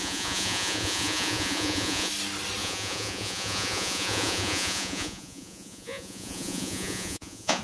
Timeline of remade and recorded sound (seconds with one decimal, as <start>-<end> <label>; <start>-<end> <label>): 0.0-2.1 remade; 2.1-2.6 recorded; 2.6-7.6 remade